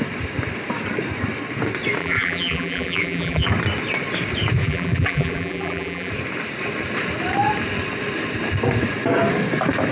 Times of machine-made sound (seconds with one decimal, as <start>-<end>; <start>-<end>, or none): 2.0-3.5; 4.6-6.1

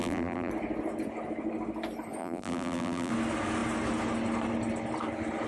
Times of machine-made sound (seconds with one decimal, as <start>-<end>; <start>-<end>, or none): 0.0-0.5; 2.2-3.1

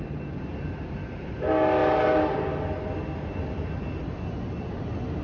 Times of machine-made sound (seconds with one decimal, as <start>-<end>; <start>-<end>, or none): none

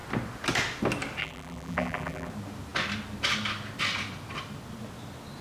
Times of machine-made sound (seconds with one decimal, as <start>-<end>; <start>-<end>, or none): 1.2-2.3

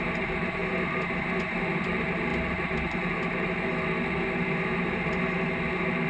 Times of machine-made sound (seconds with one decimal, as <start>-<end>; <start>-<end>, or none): none

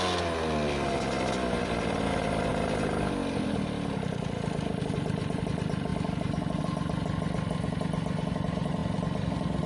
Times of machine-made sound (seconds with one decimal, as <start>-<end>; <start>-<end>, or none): none

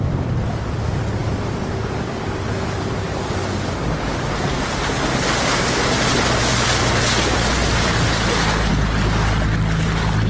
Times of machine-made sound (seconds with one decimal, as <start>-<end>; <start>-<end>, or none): 1.2-2.5; 7.6-8.7